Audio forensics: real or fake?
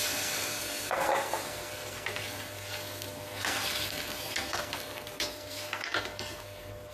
fake